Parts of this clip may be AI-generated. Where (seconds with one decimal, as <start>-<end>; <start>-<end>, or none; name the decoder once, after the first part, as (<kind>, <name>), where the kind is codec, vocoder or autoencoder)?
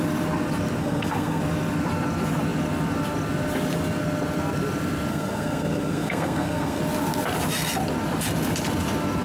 0.8-1.4 (codec, SNAC); 5.1-6.8